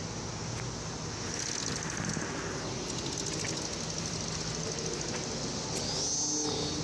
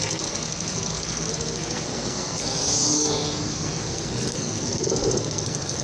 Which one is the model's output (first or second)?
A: second